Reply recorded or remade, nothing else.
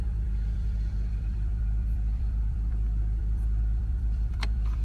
remade